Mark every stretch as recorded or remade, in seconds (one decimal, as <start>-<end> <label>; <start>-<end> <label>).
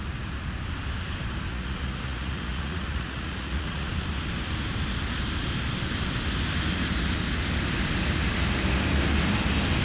0.0-1.5 recorded; 1.5-3.9 remade; 3.9-9.8 recorded